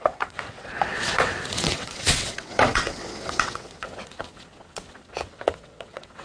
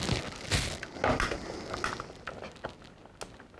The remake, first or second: first